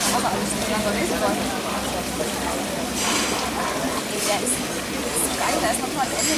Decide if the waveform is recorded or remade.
recorded